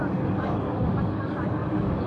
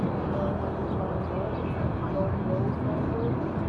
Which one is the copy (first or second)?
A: first